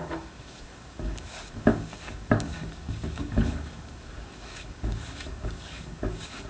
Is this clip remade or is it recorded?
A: remade